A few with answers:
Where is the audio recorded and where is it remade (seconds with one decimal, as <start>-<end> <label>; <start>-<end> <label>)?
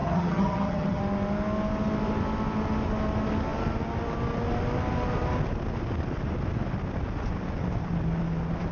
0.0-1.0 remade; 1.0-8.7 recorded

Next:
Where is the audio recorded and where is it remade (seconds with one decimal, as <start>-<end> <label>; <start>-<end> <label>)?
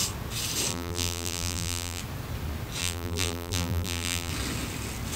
0.0-0.7 recorded; 0.7-2.0 remade; 2.0-2.8 recorded; 2.8-4.3 remade; 4.3-5.2 recorded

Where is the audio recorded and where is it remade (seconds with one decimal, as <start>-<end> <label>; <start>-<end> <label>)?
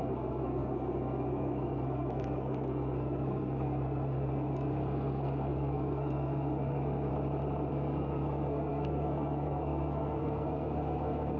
0.0-7.1 remade; 7.1-7.7 recorded; 7.7-11.4 remade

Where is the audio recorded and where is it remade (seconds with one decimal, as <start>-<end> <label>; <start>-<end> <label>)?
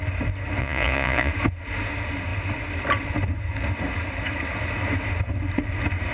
0.0-0.6 recorded; 0.6-1.3 remade; 1.3-6.1 recorded